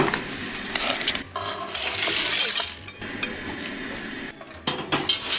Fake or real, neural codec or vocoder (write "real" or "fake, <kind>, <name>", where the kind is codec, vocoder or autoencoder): real